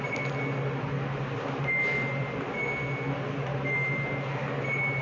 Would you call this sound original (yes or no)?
yes